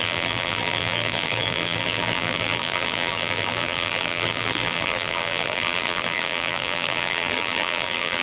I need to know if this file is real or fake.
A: fake